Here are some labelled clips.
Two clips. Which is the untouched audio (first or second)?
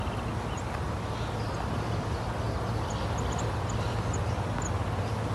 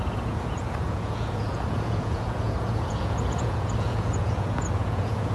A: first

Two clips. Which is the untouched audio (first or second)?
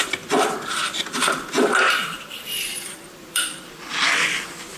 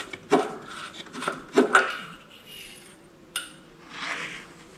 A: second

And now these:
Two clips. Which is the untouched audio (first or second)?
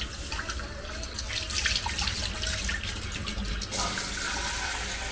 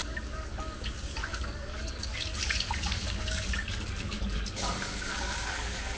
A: first